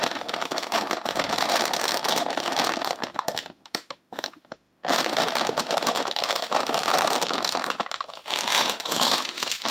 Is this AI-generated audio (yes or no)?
yes